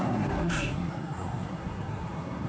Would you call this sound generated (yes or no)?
yes